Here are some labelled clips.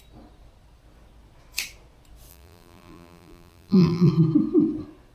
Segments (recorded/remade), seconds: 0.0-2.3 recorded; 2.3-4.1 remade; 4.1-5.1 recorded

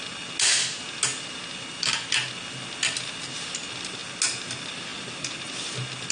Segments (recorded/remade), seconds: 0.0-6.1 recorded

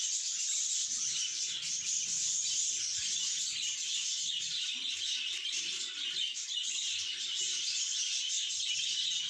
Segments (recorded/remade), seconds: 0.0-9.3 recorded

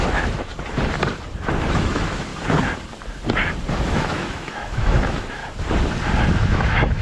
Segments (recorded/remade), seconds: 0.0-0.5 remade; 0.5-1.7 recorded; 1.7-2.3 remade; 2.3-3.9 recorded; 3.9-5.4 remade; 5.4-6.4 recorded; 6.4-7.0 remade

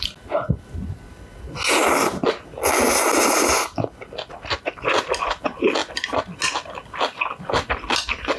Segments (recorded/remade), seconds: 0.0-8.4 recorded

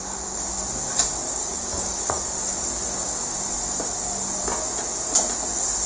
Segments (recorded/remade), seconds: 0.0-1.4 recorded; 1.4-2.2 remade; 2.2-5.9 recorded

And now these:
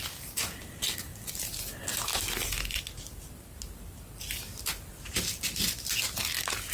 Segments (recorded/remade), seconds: 0.0-6.7 recorded

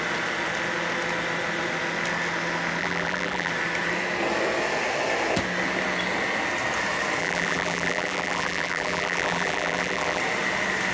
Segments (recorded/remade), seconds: 0.0-2.8 recorded; 2.8-3.5 remade; 3.5-7.2 recorded; 7.2-10.2 remade; 10.2-10.9 recorded